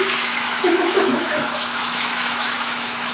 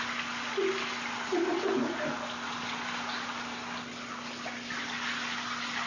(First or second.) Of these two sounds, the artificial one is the first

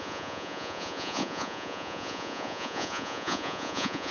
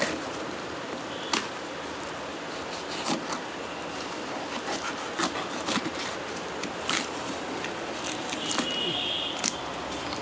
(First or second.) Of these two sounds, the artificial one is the first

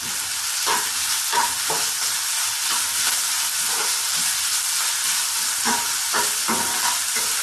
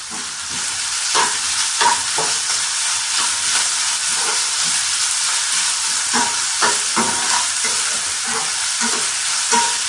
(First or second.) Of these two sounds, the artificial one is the second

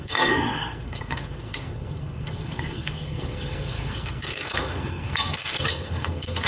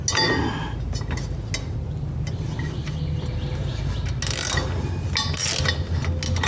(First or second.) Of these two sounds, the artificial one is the first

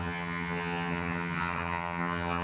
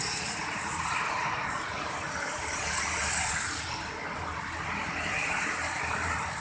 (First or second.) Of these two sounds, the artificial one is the first